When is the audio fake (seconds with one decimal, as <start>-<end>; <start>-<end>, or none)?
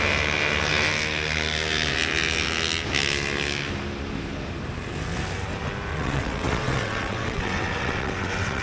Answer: 5.9-8.6